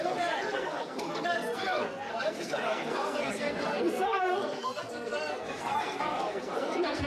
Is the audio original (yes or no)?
no